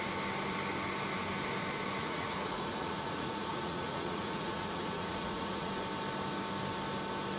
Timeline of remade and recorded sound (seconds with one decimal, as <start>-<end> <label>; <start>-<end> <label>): 0.0-2.0 recorded; 2.0-5.7 remade; 5.7-7.4 recorded